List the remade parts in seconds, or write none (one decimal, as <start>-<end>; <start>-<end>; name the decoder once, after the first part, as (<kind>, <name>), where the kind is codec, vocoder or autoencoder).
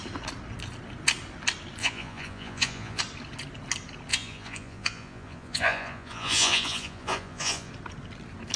1.8-3.0 (vocoder, Vocos); 4.1-7.7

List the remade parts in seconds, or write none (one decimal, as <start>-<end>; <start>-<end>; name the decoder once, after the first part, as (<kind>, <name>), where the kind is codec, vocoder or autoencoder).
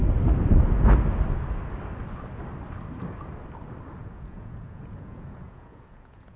4.0-6.4 (vocoder, Vocos)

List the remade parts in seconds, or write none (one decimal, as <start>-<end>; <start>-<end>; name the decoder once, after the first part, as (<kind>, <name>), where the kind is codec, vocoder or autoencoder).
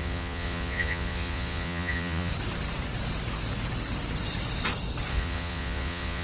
0.0-2.3 (vocoder, Vocos); 5.1-6.2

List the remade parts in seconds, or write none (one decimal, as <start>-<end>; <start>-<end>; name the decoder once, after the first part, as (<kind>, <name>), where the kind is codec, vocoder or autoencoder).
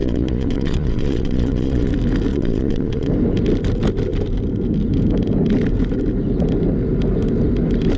0.0-1.9 (vocoder, Vocos); 2.3-3.1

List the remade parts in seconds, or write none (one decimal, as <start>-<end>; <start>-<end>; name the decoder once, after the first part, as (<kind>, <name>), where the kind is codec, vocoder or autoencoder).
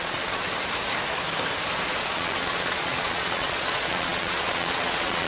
0.0-0.4 (vocoder, Vocos); 2.0-5.3